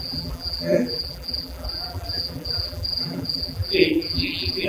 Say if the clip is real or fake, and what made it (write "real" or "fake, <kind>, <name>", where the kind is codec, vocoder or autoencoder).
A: fake, vocoder, BigVGAN v2